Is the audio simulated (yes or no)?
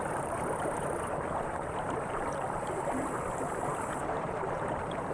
yes